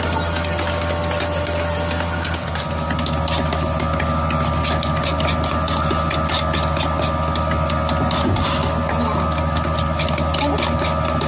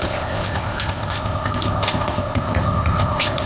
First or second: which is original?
first